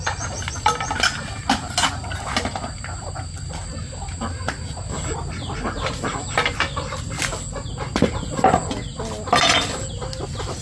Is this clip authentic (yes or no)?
yes